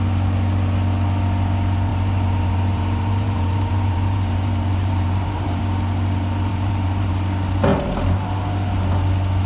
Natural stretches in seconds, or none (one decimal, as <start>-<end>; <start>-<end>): 0.0-1.9; 5.6-6.5; 7.1-9.5